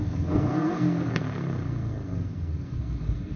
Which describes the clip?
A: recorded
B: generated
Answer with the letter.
B